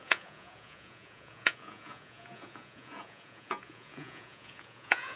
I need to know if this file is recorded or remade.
remade